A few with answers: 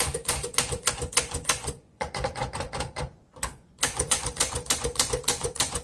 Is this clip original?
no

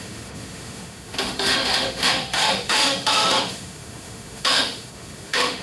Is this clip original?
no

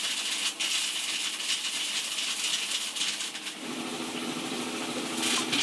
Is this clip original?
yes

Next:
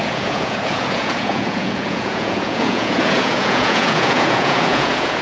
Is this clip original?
no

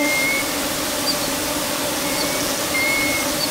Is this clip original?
yes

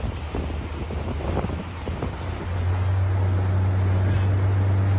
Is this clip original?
yes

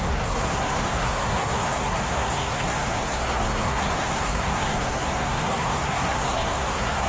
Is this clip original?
no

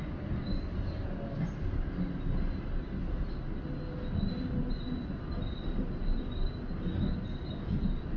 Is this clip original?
yes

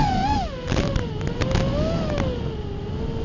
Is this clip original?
yes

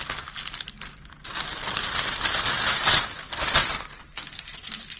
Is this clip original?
yes